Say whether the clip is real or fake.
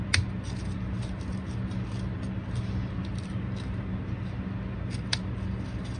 real